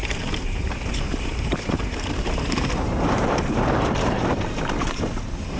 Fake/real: fake